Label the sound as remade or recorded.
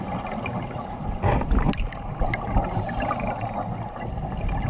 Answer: recorded